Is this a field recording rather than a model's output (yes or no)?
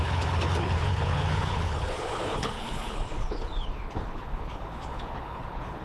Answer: no